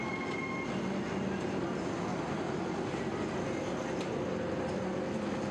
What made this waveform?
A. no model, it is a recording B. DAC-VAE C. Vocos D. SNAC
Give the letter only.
A